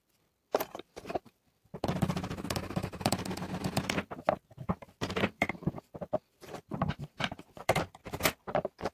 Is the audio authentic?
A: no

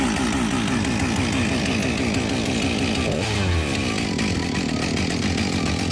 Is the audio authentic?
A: yes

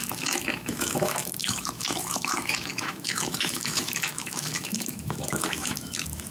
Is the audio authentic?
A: no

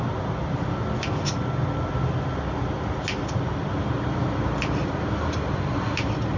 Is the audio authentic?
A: yes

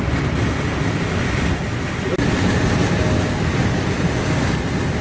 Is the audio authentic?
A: yes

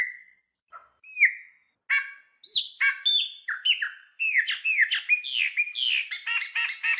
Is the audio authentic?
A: yes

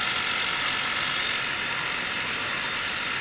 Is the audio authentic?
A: yes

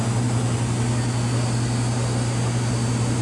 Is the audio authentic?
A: yes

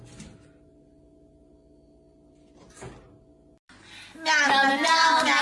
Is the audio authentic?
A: yes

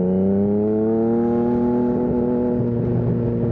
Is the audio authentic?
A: yes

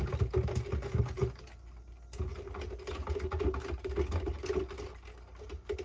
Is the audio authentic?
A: yes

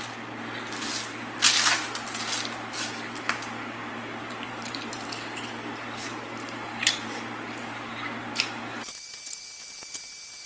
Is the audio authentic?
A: yes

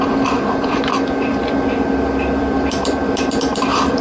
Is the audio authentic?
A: no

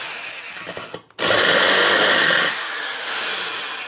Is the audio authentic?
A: yes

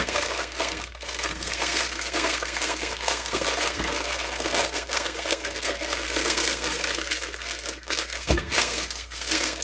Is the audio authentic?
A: no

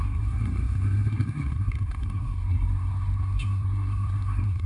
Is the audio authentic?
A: no